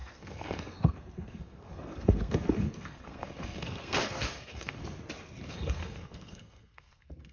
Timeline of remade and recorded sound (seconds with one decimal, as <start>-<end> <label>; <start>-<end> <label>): 0.0-4.8 remade; 4.8-5.5 recorded; 5.5-7.3 remade